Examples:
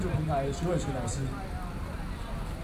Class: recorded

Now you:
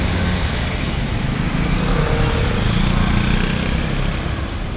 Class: recorded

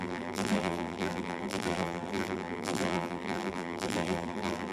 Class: remade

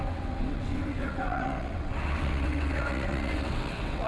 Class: remade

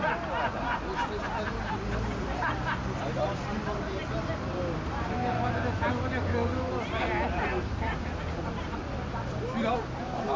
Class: recorded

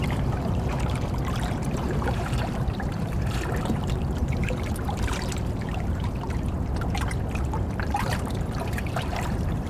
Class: remade